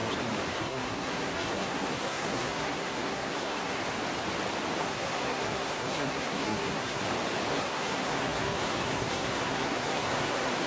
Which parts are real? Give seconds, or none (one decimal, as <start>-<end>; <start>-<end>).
0.0-0.5; 3.8-4.8; 7.0-7.5